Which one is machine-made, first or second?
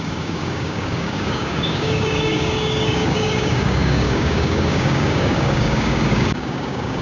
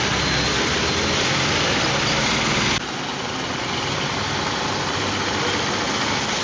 first